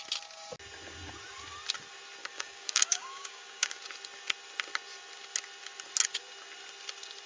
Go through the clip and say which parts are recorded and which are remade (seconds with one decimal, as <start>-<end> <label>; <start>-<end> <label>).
0.0-2.2 recorded; 2.2-3.8 remade; 3.8-7.3 recorded